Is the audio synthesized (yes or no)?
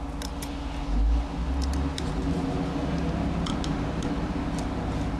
no